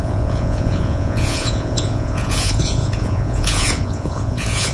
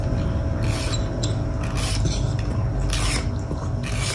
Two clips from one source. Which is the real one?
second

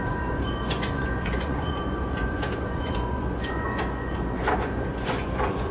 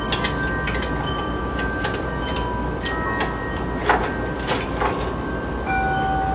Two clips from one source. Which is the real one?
second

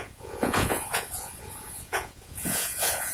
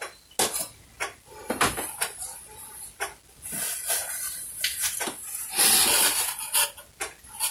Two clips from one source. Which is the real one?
second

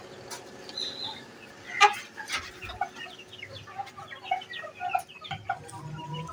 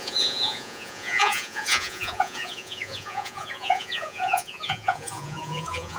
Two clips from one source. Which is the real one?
first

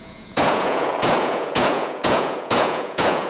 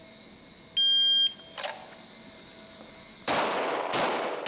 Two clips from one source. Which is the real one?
second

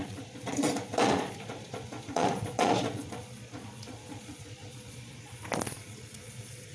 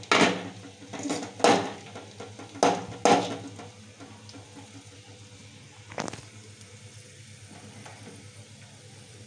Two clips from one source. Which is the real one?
second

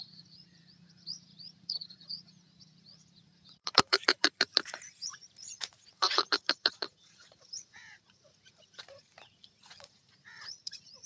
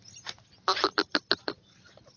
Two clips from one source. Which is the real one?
second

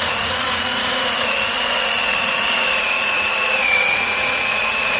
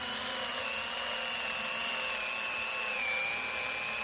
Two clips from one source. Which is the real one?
second